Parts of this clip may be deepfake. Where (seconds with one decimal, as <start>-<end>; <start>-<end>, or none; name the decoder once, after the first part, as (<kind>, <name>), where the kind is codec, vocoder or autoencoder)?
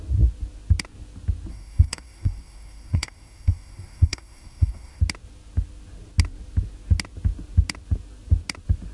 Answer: 1.5-5.0 (codec, SNAC)